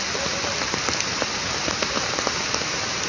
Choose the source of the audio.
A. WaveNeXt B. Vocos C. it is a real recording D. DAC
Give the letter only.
C